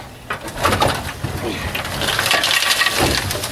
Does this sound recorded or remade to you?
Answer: recorded